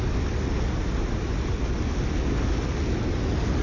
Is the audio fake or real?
real